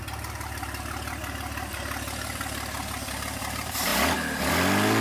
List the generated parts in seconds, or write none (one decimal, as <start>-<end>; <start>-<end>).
none